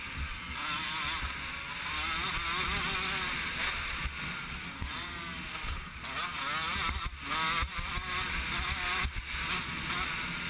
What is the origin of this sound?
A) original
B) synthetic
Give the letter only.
A